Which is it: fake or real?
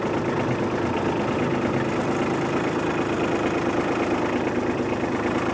real